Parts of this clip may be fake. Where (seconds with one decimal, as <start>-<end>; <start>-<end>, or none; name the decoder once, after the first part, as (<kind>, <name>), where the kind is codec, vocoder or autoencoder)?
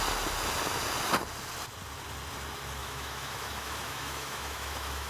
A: 2.8-5.1 (autoencoder, DAC-VAE)